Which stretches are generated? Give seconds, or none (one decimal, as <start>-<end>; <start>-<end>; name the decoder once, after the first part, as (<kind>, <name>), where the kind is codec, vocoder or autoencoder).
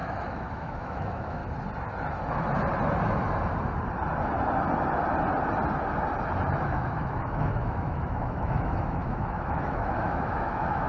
0.0-1.4 (autoencoder, DAC-VAE); 6.6-10.9